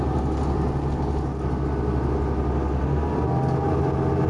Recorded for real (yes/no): yes